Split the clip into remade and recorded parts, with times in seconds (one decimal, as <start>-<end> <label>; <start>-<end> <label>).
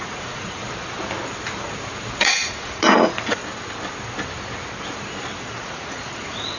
0.0-0.6 remade; 0.6-2.2 recorded; 2.2-3.4 remade; 3.4-5.6 recorded; 5.6-6.6 remade